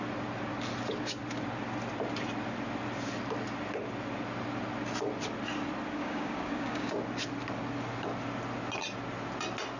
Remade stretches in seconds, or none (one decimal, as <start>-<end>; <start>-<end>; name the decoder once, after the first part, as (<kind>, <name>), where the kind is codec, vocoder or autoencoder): 6.0-6.9 (codec, DAC)

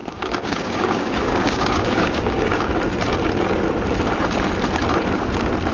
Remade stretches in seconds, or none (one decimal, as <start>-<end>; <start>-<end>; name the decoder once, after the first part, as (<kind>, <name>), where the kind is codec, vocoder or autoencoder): 0.0-2.7 (codec, DAC)

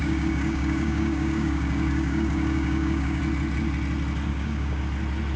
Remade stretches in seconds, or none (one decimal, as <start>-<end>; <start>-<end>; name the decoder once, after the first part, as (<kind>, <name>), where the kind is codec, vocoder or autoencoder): 0.0-3.2 (codec, DAC); 4.3-4.8